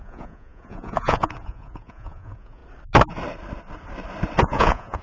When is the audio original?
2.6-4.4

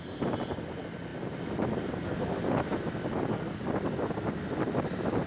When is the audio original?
0.0-5.3

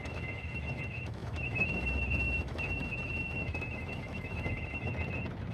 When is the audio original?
4.9-5.5

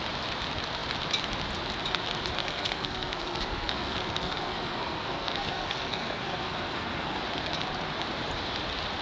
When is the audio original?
0.0-2.4; 7.2-9.0

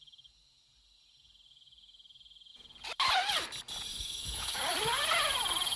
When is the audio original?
0.0-3.9; 4.6-5.8

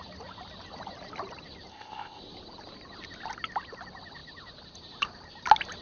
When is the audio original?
0.0-1.7; 2.2-5.8